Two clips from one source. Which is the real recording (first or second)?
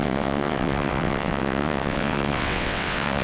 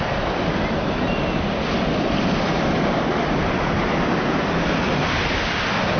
second